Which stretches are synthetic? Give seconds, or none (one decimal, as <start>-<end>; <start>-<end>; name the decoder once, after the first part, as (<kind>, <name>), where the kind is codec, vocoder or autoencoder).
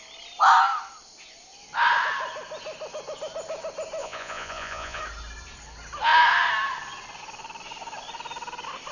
4.0-5.0 (vocoder, Vocos)